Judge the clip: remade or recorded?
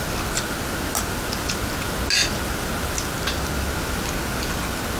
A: recorded